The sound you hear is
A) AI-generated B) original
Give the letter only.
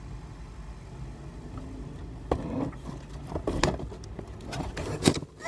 B